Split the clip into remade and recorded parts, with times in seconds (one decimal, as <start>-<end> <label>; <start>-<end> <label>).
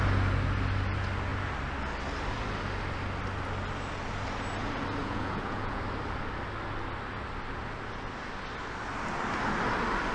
0.0-5.0 recorded; 5.0-5.8 remade; 5.8-10.1 recorded